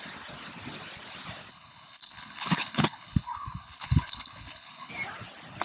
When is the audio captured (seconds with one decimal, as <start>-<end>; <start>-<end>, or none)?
0.0-1.5; 4.9-5.6